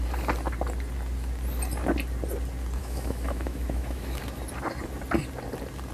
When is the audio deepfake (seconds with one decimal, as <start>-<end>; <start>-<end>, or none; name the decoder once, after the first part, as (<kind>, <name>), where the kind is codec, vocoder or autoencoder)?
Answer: 2.8-4.2 (autoencoder, DAC-VAE)